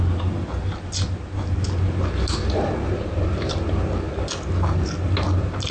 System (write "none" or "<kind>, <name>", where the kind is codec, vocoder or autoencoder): none